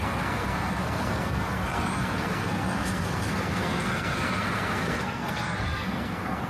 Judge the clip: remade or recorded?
remade